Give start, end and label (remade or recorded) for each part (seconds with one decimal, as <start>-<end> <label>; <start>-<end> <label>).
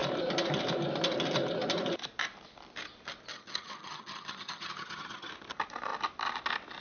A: 0.0-3.3 recorded; 3.3-5.3 remade; 5.3-6.8 recorded